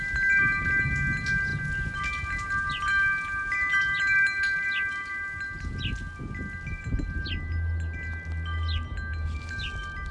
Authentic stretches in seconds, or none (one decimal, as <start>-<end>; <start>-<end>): 0.0-10.1